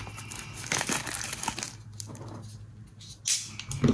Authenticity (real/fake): real